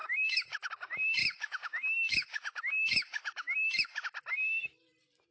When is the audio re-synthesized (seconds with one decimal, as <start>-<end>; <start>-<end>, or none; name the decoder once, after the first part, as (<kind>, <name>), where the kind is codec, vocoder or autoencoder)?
0.0-0.7 (autoencoder, DAC-VAE); 1.2-4.0